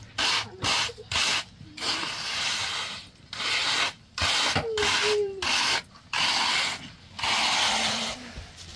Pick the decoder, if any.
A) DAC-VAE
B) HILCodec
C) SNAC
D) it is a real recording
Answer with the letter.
D